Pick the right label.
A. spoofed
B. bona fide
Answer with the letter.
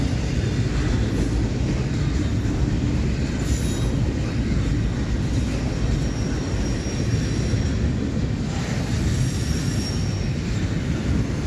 B